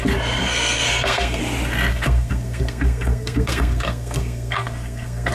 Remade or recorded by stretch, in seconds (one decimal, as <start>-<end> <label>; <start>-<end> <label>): 0.0-0.4 recorded; 0.4-1.4 remade; 1.4-1.9 recorded; 1.9-5.3 remade